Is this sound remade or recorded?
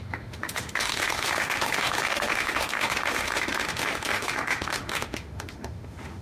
remade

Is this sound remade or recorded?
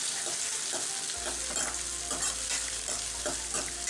recorded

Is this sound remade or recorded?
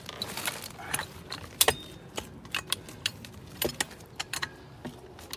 recorded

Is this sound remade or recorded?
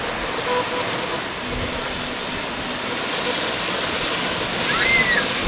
recorded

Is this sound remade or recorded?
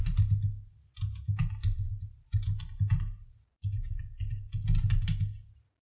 recorded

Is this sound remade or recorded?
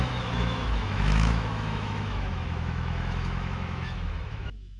remade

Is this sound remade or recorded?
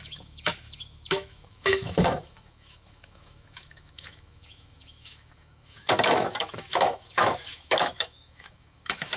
remade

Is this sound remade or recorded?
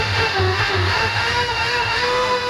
remade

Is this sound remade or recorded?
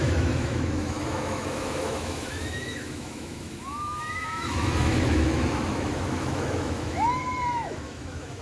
remade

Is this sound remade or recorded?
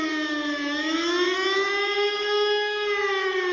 remade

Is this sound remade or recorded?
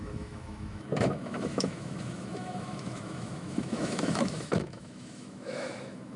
remade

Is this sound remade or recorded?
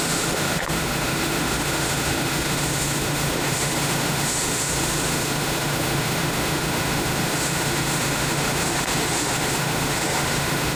remade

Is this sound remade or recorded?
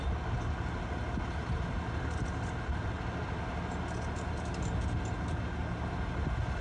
recorded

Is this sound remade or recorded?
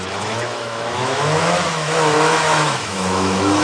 remade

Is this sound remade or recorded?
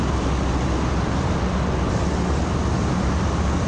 recorded